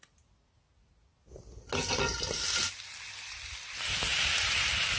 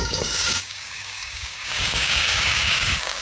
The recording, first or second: first